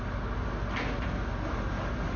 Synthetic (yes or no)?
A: no